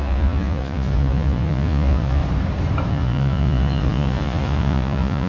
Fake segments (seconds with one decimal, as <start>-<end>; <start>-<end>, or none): 0.0-2.2; 2.9-5.3